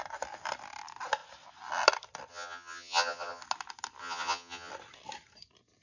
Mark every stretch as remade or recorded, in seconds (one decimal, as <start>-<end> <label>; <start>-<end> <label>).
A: 0.0-2.3 recorded; 2.3-3.4 remade; 3.4-4.0 recorded; 4.0-4.7 remade; 4.7-5.8 recorded